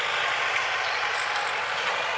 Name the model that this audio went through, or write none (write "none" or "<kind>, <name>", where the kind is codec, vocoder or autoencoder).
none